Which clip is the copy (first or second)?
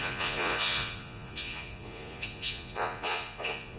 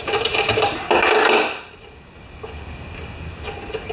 first